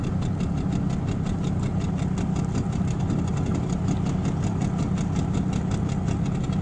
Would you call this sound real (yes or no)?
yes